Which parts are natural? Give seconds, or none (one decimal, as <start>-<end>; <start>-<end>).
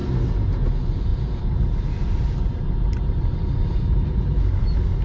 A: 0.0-5.0